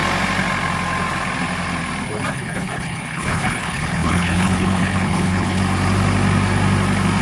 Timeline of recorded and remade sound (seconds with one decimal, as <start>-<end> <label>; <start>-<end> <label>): 0.0-2.3 recorded; 2.3-5.6 remade; 5.6-7.2 recorded